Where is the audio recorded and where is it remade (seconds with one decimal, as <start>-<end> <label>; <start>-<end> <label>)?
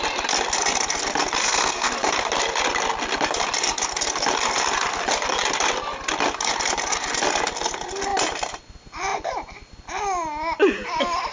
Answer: 0.0-1.4 recorded; 1.4-1.9 remade; 1.9-11.3 recorded